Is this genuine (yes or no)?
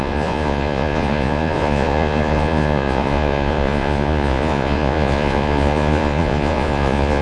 no